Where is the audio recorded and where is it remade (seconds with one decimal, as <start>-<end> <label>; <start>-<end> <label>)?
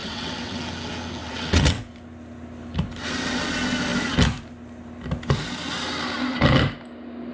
0.0-0.6 remade; 0.6-1.2 recorded; 1.2-1.8 remade; 1.8-7.3 recorded